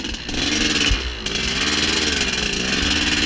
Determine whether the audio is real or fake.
real